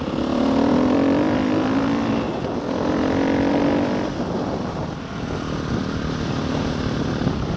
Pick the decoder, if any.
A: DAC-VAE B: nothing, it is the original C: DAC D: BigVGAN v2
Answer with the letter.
D